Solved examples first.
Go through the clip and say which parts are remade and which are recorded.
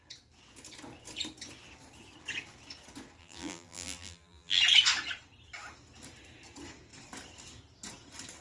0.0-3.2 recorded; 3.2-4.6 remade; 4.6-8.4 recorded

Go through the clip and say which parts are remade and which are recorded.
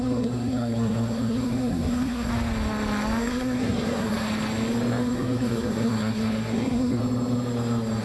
0.0-2.3 remade; 2.3-3.2 recorded; 3.2-4.3 remade; 4.3-5.0 recorded; 5.0-7.0 remade; 7.0-8.0 recorded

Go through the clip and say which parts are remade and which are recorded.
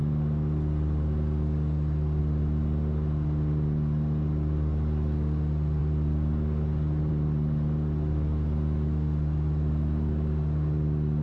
0.0-11.2 recorded